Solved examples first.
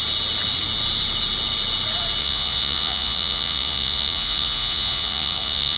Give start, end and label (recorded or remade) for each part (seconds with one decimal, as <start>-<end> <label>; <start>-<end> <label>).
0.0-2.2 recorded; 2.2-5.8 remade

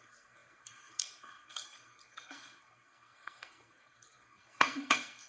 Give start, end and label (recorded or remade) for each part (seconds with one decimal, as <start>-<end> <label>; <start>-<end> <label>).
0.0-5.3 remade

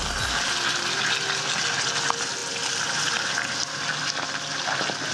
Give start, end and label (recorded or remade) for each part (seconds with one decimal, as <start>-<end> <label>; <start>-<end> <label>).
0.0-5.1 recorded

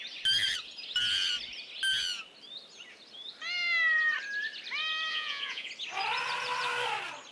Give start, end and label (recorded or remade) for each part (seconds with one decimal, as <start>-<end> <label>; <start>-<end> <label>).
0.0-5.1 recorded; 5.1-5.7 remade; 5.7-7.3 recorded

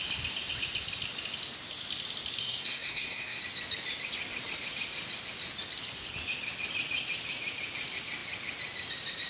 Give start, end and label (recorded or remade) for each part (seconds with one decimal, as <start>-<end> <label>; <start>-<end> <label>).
0.0-2.4 recorded; 2.4-3.4 remade; 3.4-9.3 recorded

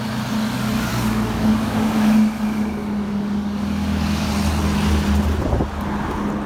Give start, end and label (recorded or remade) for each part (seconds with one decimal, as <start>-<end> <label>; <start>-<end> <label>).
0.0-0.9 recorded; 0.9-4.3 remade; 4.3-6.5 recorded